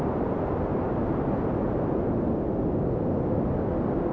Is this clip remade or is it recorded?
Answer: recorded